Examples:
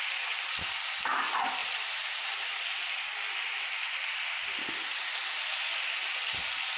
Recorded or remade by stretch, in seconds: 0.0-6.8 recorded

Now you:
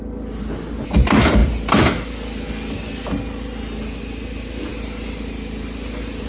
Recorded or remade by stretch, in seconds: 0.0-6.3 recorded

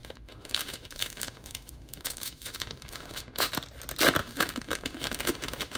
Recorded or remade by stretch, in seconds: 0.0-3.5 remade; 3.5-4.2 recorded; 4.2-5.8 remade

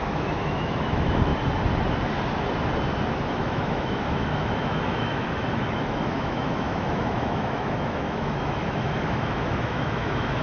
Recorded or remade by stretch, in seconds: 0.0-1.3 remade; 1.3-3.1 recorded; 3.1-10.4 remade

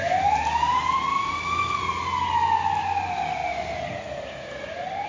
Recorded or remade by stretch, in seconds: 0.0-1.1 recorded; 1.1-1.8 remade; 1.8-5.1 recorded